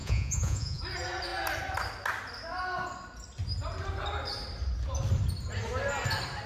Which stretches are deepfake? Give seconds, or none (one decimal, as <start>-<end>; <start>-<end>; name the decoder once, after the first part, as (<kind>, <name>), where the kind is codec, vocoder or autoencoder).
0.0-0.8 (vocoder, Vocos)